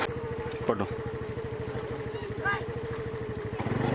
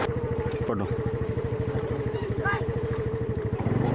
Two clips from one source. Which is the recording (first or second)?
first